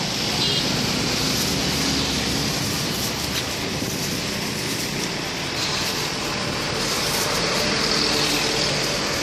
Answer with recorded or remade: recorded